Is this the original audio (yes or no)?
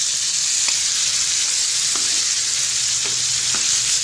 yes